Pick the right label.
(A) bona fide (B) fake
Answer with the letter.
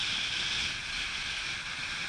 A